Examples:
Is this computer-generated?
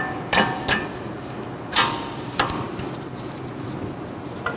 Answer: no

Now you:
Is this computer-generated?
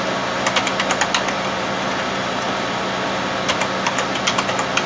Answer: no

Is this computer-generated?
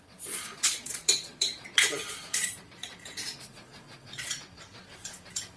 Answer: yes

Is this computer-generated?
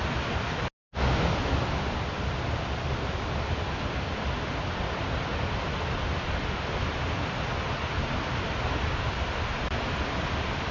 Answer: no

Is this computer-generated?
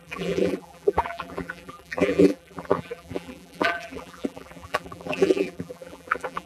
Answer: yes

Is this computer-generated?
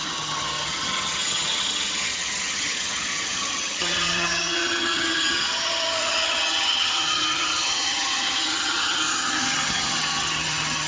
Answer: yes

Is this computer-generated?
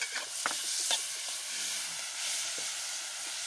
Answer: no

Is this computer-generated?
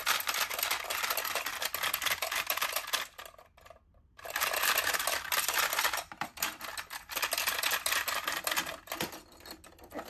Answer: no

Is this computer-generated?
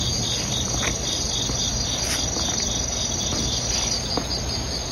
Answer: no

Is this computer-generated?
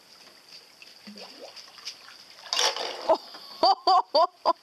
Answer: no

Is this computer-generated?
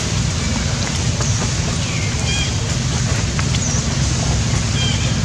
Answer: no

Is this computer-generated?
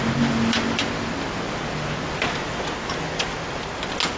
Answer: no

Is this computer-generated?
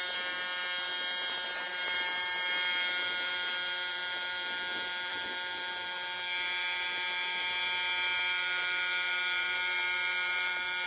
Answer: no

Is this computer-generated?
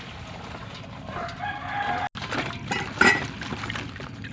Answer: no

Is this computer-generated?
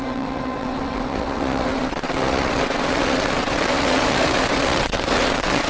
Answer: yes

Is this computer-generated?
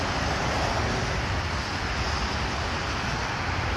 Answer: no